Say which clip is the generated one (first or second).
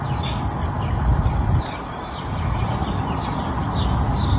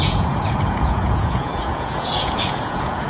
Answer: second